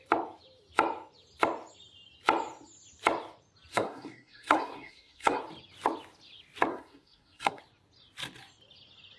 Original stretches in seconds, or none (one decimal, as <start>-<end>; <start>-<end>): 0.0-3.7; 5.4-6.7; 7.6-9.2